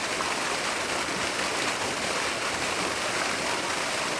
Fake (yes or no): no